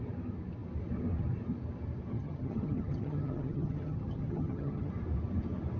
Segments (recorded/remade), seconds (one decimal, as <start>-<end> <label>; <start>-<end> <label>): 0.0-2.1 recorded; 2.1-4.9 remade; 4.9-5.8 recorded